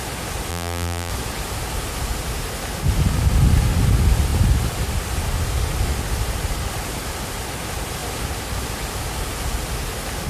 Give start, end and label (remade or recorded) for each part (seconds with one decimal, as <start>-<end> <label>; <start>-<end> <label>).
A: 0.0-0.5 recorded; 0.5-1.1 remade; 1.1-10.3 recorded